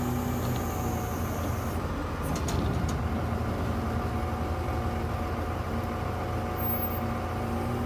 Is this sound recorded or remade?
recorded